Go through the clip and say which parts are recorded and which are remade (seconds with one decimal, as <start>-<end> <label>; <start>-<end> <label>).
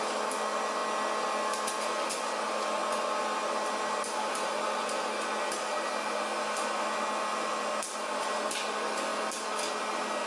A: 0.0-10.3 recorded